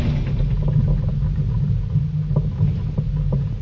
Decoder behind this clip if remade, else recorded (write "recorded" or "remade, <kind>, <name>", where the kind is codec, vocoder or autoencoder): recorded